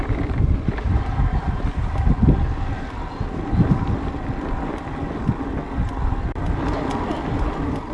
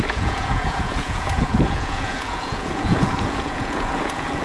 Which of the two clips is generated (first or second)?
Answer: second